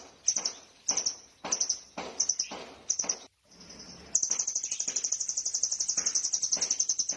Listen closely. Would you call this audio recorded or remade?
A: recorded